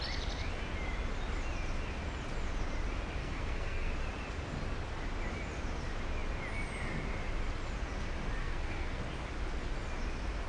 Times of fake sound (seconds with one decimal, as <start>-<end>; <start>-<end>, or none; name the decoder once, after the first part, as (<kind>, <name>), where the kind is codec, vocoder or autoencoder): 3.2-3.9 (codec, SNAC); 8.4-9.0